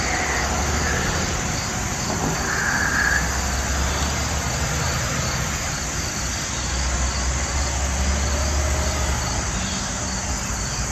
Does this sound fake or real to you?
real